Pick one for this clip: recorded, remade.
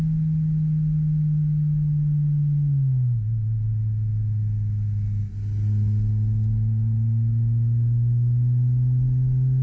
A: recorded